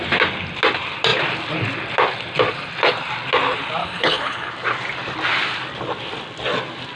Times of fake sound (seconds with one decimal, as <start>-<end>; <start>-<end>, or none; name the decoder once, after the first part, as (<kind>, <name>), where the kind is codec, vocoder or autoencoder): 3.8-4.5 (codec, HILCodec)

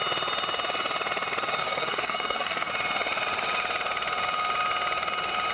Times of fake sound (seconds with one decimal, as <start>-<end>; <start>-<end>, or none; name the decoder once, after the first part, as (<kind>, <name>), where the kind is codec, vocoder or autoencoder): 1.6-2.7 (codec, SNAC)

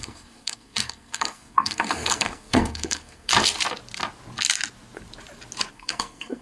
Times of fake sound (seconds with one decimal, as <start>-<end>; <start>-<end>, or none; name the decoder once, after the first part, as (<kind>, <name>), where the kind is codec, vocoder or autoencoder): 0.0-3.3 (codec, SNAC); 5.7-6.4

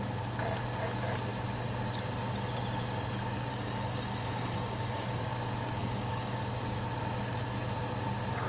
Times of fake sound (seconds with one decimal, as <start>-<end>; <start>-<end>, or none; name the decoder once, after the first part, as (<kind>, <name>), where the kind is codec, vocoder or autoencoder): 3.5-5.2 (codec, DAC); 5.8-6.4

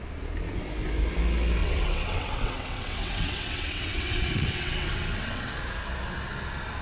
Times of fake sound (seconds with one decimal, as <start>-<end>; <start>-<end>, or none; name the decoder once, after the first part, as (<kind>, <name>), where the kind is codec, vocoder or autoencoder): 1.6-5.5 (vocoder, WaveNeXt)

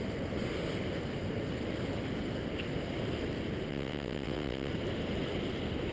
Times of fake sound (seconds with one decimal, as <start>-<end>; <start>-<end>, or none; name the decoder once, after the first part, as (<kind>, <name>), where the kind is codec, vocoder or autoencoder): 3.7-4.7 (vocoder, WaveNeXt)

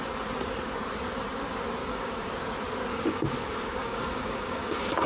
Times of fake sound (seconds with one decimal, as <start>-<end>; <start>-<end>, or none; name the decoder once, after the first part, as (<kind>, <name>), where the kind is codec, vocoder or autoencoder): 1.8-2.3 (codec, DAC); 2.9-5.1